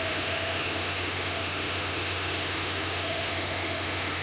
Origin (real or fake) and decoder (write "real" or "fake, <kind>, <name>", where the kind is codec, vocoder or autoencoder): fake, autoencoder, DAC-VAE